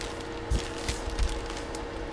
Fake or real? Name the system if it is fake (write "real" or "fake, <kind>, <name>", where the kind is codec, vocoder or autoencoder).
real